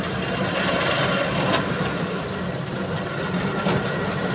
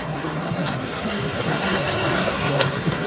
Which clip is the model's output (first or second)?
second